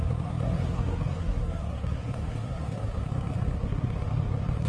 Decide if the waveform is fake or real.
fake